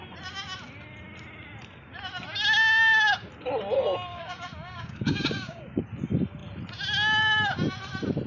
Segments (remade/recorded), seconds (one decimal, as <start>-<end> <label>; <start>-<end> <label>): 0.0-4.1 recorded; 4.1-5.8 remade; 5.8-8.3 recorded